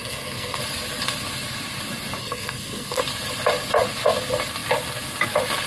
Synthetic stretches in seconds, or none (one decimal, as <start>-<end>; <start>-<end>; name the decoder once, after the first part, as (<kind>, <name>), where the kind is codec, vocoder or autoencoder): 0.0-0.6 (codec, SNAC); 2.2-3.0